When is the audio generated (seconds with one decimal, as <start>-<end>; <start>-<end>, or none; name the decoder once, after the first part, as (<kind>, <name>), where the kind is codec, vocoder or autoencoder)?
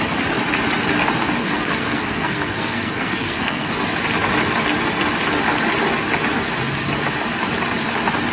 1.4-3.7 (codec, SNAC)